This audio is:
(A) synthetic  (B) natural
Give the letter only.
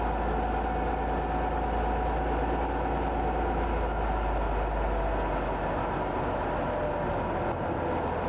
B